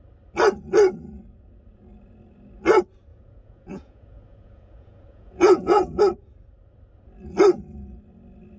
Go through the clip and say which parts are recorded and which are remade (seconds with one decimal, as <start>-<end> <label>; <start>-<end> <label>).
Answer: 0.0-3.1 recorded; 3.1-6.0 remade; 6.0-8.6 recorded